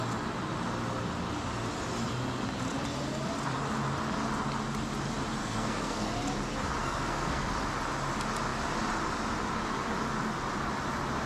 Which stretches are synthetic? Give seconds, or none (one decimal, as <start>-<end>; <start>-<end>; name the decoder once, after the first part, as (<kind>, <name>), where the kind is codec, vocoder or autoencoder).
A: 5.4-6.1 (codec, SNAC); 6.8-7.5